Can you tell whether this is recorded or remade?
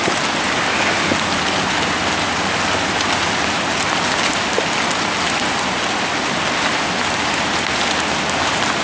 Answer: recorded